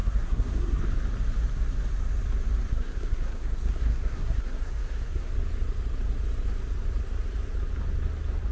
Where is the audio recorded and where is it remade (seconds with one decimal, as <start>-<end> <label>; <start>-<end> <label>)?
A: 0.0-0.8 remade; 0.8-2.7 recorded; 2.7-5.3 remade; 5.3-8.5 recorded